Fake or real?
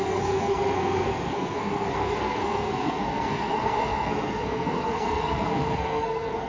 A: fake